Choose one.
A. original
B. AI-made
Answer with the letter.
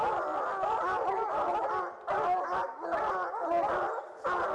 A